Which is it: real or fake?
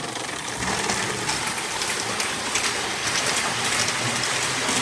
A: real